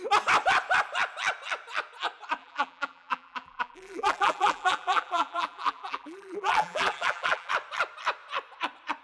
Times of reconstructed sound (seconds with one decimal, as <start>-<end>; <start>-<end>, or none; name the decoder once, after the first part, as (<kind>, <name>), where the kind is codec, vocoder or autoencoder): 2.4-7.5 (vocoder, BigVGAN v2)